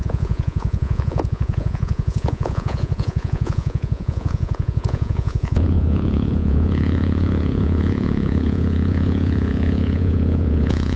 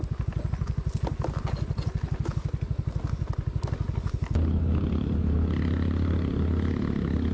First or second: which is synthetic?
first